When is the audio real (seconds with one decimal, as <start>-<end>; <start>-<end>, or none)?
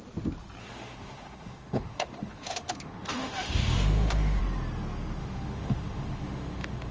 0.0-0.6; 4.4-5.2